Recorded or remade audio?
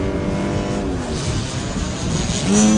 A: recorded